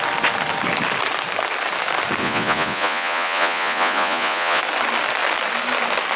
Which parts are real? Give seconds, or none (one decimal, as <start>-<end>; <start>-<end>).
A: 0.0-2.2; 4.6-6.2